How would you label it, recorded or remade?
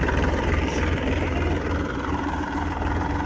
remade